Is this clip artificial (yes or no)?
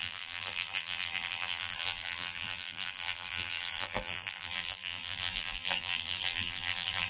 yes